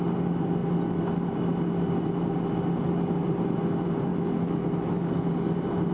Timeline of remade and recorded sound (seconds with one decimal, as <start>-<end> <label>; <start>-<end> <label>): 0.0-4.1 recorded; 4.1-5.3 remade; 5.3-5.9 recorded